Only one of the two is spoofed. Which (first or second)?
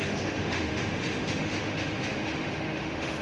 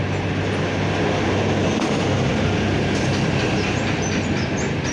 first